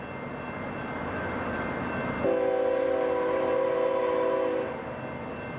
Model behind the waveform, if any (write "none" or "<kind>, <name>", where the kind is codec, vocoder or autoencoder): none